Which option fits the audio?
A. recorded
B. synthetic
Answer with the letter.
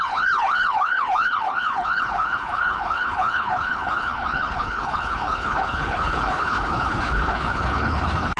B